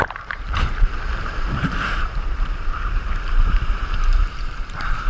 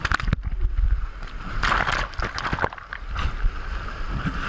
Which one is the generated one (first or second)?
first